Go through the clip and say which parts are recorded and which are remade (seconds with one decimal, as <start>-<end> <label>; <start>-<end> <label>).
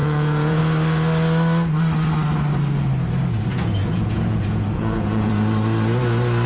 0.0-0.6 remade; 0.6-3.5 recorded; 3.5-5.3 remade; 5.3-6.5 recorded